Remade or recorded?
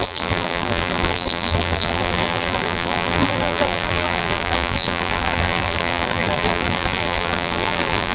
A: remade